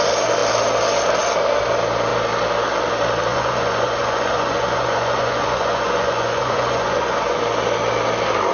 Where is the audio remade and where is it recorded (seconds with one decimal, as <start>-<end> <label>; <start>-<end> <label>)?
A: 0.0-3.3 recorded; 3.3-7.4 remade; 7.4-8.5 recorded